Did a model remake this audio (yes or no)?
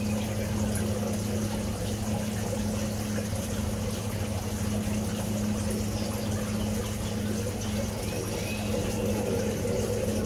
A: no